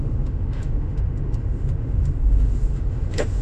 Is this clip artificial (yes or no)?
yes